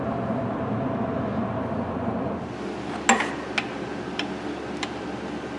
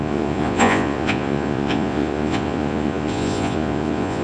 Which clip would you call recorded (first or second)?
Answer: first